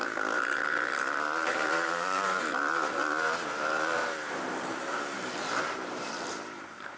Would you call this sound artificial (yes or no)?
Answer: yes